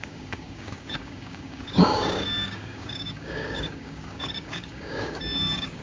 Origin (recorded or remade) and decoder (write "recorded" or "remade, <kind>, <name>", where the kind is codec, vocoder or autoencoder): remade, codec, DAC